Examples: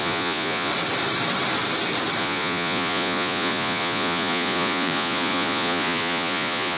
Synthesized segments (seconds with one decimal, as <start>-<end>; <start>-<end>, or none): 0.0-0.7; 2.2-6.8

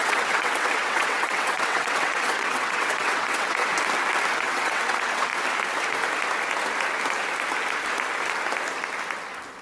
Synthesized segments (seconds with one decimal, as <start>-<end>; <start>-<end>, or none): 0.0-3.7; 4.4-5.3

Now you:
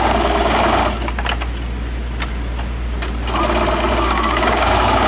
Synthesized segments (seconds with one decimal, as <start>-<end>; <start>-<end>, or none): 0.0-0.8; 3.9-5.1

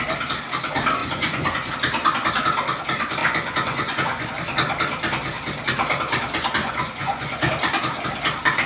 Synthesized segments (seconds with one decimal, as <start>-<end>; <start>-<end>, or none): 1.0-1.7; 3.2-4.3; 6.6-7.5